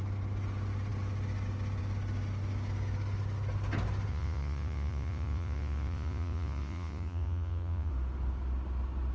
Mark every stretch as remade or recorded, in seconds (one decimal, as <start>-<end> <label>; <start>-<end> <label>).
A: 0.0-4.1 recorded; 4.1-7.9 remade; 7.9-9.1 recorded